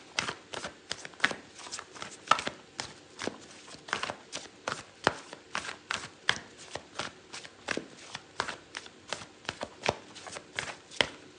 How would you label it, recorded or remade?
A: recorded